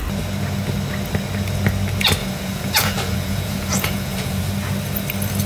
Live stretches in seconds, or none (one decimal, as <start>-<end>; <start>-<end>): 0.0-2.2; 4.4-5.5